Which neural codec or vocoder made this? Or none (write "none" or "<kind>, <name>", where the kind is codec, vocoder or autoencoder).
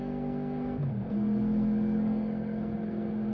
codec, SNAC